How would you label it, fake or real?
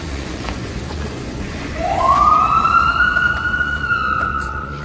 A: fake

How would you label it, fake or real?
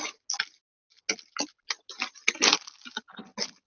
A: real